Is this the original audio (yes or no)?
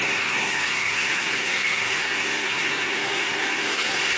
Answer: no